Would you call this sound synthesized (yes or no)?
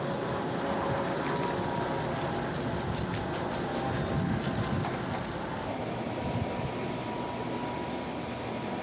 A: no